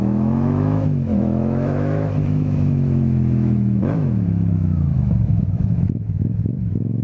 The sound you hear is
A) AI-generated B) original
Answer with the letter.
A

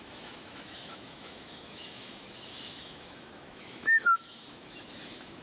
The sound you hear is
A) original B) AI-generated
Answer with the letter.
B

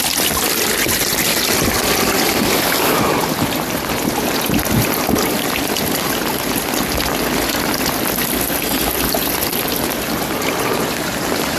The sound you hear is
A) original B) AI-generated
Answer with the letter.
A